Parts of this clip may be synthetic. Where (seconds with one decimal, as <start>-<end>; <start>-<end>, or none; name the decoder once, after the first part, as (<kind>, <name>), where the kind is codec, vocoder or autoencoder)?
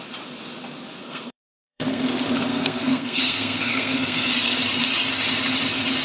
1.0-2.1 (codec, SNAC); 2.5-4.3